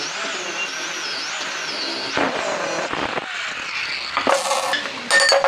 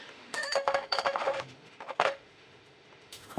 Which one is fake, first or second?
second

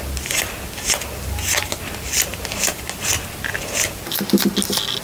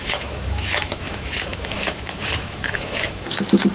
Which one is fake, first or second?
second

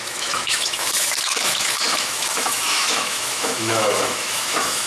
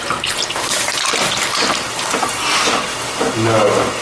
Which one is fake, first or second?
first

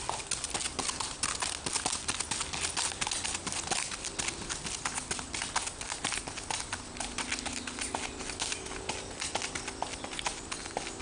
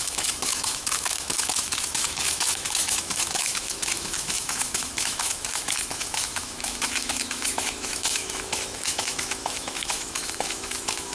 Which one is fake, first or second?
second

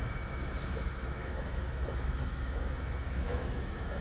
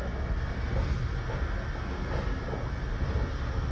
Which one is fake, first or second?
first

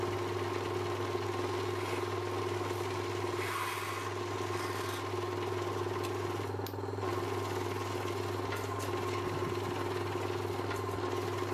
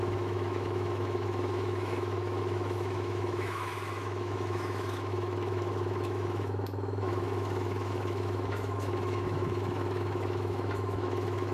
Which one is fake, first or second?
second